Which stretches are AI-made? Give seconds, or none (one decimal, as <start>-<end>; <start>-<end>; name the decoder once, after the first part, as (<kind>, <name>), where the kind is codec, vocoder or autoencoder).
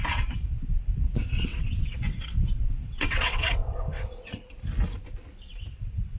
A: 1.5-4.3 (vocoder, WaveNeXt); 5.5-6.2